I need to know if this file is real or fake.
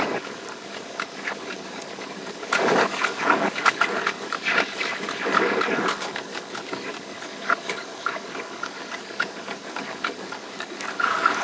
fake